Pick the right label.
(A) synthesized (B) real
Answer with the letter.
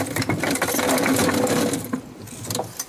B